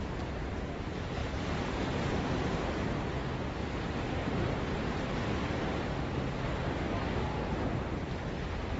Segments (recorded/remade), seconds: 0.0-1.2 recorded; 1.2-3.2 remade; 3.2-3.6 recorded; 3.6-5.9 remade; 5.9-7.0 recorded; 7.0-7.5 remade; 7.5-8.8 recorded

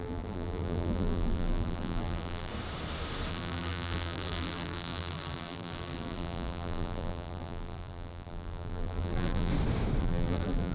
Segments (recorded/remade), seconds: 0.0-2.5 remade; 2.5-3.3 recorded; 3.3-9.5 remade; 9.5-10.0 recorded; 10.0-10.7 remade

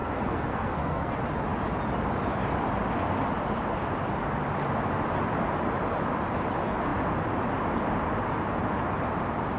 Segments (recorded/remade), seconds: 0.0-1.1 remade; 1.1-9.6 recorded

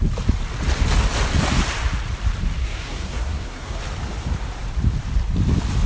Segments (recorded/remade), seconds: 0.0-2.6 recorded; 2.6-3.8 remade; 3.8-5.9 recorded